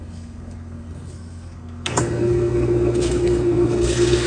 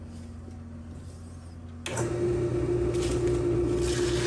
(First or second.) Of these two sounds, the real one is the second